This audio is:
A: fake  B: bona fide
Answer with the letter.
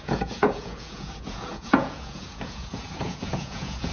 A